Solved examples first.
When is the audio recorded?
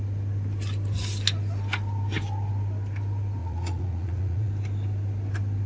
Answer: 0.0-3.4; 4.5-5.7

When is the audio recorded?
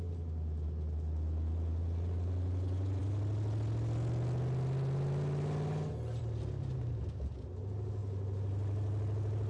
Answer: 0.0-9.5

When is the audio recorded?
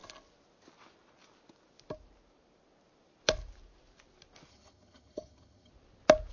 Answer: 0.0-4.5; 5.7-6.3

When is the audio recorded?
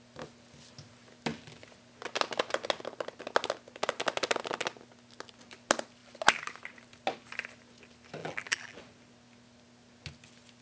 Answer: 0.0-8.2; 8.8-10.6